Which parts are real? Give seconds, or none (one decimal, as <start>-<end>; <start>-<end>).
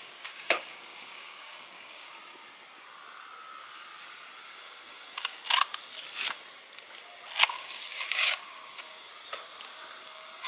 2.2-4.5; 5.4-7.5; 9.1-10.0